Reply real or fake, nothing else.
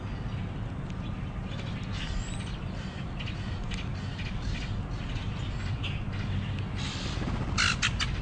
real